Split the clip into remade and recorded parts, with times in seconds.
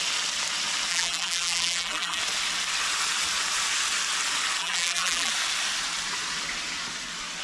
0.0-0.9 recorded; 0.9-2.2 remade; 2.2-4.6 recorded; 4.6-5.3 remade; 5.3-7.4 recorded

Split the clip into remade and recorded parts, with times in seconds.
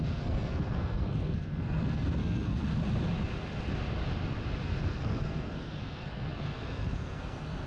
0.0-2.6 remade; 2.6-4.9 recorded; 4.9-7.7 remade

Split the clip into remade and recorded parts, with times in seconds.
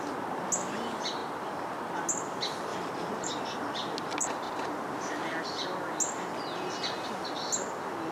0.0-2.7 recorded; 2.7-3.3 remade; 3.3-8.1 recorded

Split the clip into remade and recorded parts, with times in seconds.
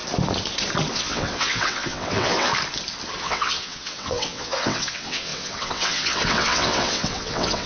0.0-0.9 recorded; 0.9-2.5 remade; 2.5-3.2 recorded; 3.2-7.7 remade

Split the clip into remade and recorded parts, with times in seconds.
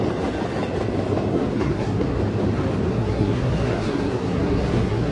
0.0-1.3 recorded; 1.3-2.2 remade; 2.2-2.9 recorded; 2.9-5.1 remade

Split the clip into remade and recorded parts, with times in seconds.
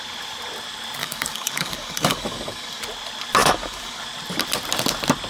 0.0-1.0 recorded; 1.0-2.8 remade; 2.8-3.4 recorded; 3.4-4.0 remade; 4.0-5.3 recorded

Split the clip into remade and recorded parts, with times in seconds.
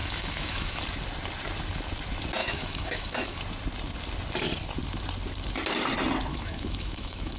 0.0-0.8 remade; 0.8-2.4 recorded; 2.4-3.4 remade; 3.4-6.3 recorded; 6.3-7.4 remade